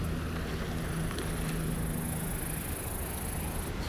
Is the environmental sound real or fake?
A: real